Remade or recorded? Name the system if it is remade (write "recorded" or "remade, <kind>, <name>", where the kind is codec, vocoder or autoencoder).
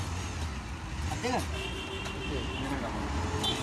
recorded